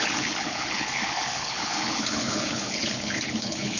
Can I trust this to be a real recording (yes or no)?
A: no